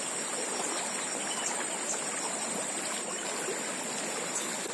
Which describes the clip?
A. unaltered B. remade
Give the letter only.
A